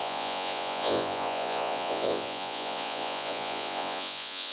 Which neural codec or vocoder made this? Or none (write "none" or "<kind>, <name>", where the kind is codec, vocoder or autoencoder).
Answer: vocoder, Vocos